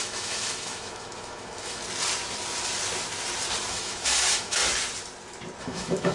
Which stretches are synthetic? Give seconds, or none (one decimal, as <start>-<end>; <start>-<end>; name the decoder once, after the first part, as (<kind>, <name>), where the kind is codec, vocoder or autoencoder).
0.0-1.8 (autoencoder, DAC-VAE); 3.7-4.6; 5.6-6.1